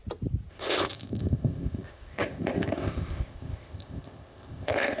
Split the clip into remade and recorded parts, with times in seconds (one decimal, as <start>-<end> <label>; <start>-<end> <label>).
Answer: 0.0-0.5 recorded; 0.5-5.0 remade